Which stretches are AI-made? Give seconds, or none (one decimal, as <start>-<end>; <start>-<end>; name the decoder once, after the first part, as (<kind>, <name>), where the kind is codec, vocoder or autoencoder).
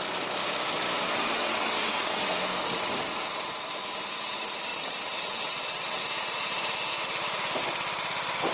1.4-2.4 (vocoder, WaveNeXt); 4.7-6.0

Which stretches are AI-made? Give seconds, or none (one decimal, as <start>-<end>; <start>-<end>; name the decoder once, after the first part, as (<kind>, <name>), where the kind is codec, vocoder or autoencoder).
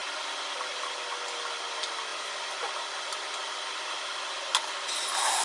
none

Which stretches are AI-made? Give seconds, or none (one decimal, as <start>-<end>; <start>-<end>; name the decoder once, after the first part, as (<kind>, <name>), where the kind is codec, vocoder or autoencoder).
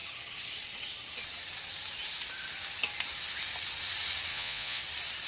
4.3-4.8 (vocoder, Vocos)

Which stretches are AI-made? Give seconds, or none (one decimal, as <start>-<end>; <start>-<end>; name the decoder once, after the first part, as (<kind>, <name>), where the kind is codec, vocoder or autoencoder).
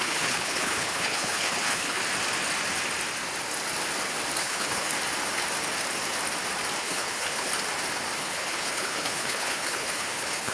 0.0-2.0 (codec, HILCodec); 4.4-4.9; 6.8-7.5; 8.2-10.5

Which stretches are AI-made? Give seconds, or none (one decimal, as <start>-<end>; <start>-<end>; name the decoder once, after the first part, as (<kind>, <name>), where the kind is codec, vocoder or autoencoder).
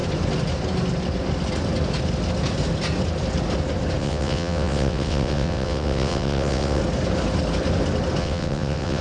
4.0-6.8 (vocoder, WaveNeXt); 8.2-9.0